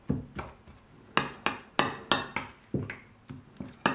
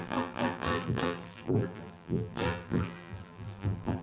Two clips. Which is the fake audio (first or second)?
second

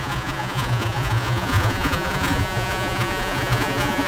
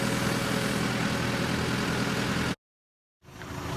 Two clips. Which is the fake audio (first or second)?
first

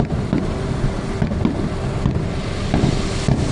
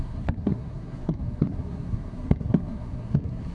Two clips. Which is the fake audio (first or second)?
second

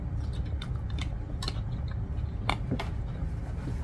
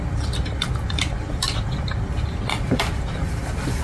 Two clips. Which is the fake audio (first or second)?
second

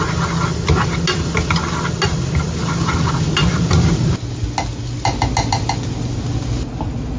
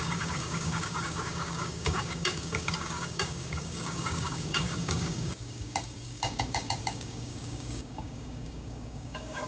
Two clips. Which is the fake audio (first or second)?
second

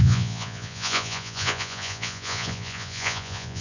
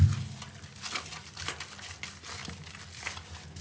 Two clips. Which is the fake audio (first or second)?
first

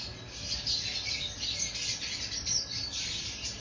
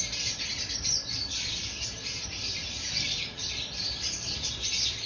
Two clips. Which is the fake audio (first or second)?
second